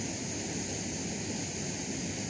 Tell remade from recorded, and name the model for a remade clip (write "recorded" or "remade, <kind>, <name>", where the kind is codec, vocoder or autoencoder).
recorded